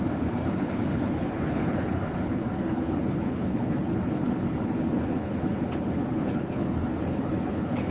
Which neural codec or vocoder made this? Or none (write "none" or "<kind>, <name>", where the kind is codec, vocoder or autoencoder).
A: codec, HILCodec